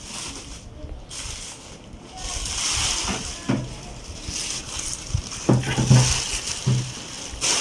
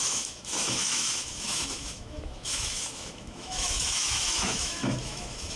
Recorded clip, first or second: first